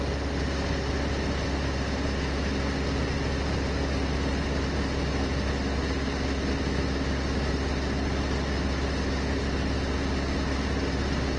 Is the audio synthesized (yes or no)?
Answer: no